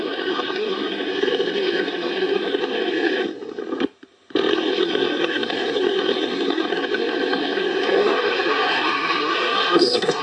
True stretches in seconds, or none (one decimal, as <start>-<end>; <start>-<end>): 3.6-4.5